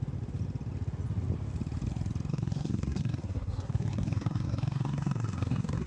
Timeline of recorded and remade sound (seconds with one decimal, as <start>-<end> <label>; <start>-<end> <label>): 0.0-2.3 recorded; 2.3-5.9 remade